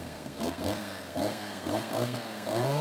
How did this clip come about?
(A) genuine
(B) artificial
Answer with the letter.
B